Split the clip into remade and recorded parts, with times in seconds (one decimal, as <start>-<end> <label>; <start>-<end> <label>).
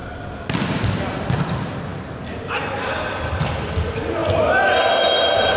0.0-5.6 recorded